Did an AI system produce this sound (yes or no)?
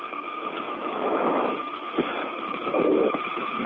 yes